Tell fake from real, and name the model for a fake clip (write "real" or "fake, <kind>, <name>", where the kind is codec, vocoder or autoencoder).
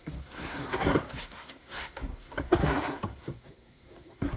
fake, codec, SNAC